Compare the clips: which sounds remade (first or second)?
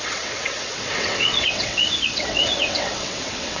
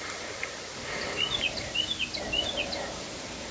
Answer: first